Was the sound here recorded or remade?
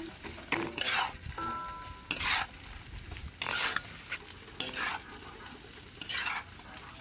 recorded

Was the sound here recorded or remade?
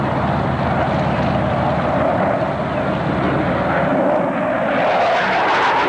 recorded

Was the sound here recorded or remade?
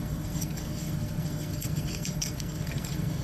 remade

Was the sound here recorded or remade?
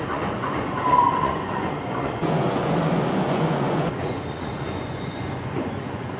remade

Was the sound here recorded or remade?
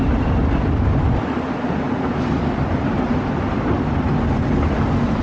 recorded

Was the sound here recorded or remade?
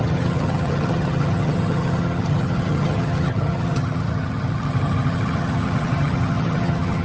remade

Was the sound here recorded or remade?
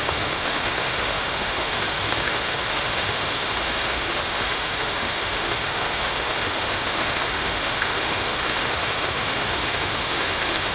remade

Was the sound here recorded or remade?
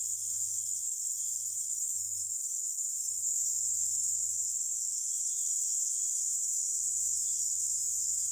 remade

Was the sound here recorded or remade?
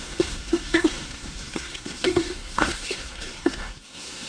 remade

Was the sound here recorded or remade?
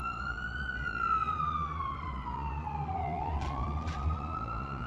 remade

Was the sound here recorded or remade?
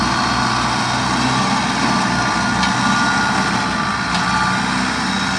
recorded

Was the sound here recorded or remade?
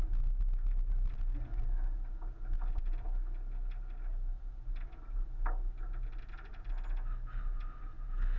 recorded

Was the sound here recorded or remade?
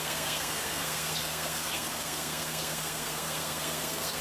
remade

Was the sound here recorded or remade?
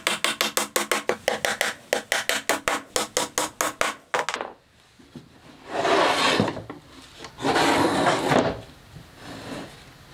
recorded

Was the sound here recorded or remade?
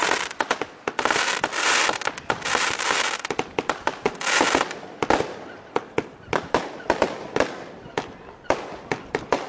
recorded